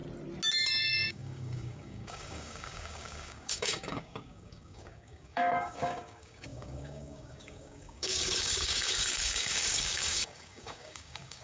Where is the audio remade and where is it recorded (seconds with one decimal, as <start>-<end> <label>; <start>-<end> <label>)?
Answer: 0.0-0.5 recorded; 0.5-11.4 remade

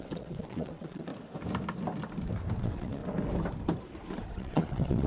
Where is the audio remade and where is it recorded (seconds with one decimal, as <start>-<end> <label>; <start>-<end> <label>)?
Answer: 0.0-1.1 remade; 1.1-2.6 recorded; 2.6-3.0 remade; 3.0-4.3 recorded; 4.3-5.1 remade